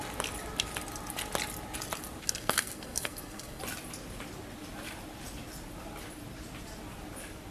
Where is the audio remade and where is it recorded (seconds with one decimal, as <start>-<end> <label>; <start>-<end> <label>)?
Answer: 0.0-2.2 recorded; 2.2-3.6 remade; 3.6-7.5 recorded